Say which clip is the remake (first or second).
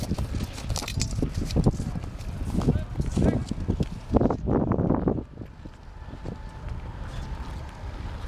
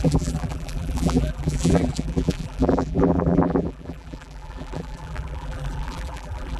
second